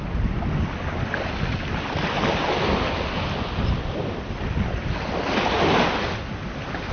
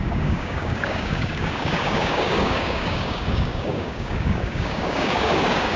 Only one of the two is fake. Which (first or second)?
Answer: second